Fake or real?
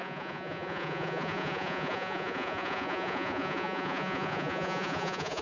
fake